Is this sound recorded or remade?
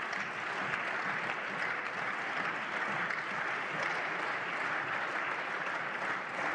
remade